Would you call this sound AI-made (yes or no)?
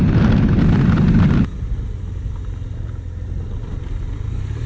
no